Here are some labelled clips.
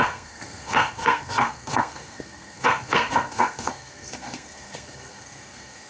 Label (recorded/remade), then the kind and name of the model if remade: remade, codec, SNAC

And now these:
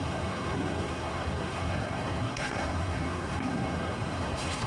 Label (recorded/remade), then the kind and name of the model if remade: remade, codec, SNAC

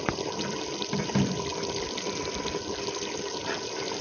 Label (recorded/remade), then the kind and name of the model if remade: recorded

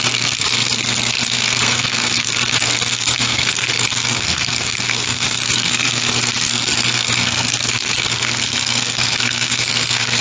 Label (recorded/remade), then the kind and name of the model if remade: remade, codec, SNAC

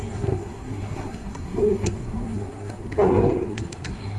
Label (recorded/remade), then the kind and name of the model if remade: remade, codec, SNAC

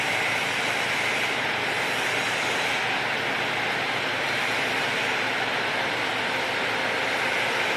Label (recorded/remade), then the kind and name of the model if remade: recorded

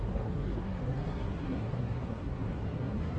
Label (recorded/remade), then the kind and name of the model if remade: remade, codec, SNAC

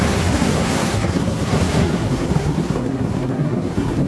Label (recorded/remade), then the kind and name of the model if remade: remade, codec, SNAC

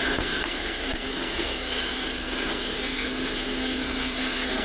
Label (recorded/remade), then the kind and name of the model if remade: remade, codec, SNAC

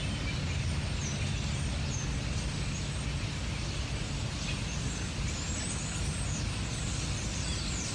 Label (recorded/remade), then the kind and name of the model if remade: recorded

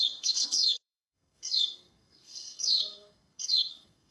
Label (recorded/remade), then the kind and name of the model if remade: remade, codec, SNAC